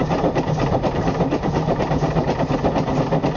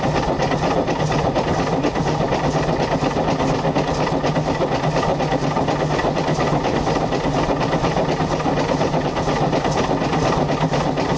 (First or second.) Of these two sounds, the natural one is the second